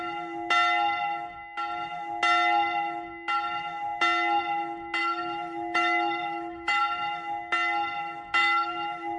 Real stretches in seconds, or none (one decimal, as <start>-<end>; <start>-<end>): 0.0-5.0; 6.8-8.4

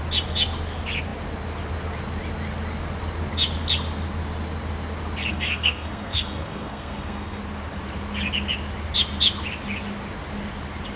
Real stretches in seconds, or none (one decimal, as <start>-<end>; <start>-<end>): 0.0-5.3; 7.4-11.0

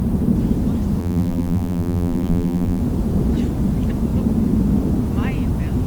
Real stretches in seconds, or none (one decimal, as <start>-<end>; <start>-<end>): 0.0-1.0; 2.8-5.9

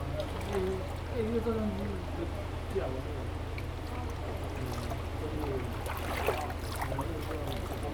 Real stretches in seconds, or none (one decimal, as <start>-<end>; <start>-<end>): 0.0-7.9

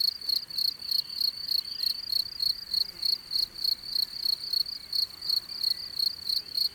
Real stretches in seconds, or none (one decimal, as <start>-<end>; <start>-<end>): 0.0-6.7

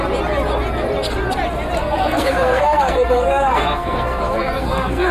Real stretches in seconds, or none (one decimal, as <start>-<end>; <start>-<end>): 0.0-1.8

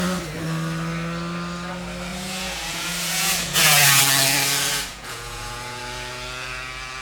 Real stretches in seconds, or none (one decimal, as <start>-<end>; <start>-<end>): 0.0-2.1; 4.0-4.7; 5.8-7.0